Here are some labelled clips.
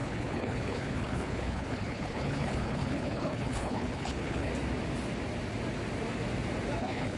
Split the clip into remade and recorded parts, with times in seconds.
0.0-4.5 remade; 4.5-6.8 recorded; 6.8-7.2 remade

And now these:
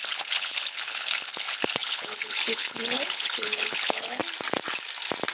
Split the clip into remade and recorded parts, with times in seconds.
0.0-4.2 remade; 4.2-5.3 recorded

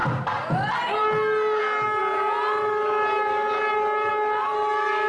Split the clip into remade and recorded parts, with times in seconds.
0.0-5.1 recorded

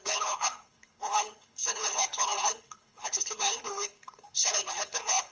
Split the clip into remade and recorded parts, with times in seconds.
0.0-5.3 remade